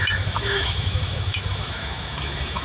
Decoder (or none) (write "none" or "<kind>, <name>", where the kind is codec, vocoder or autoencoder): autoencoder, DAC-VAE